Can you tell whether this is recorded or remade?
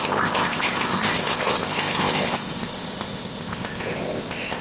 remade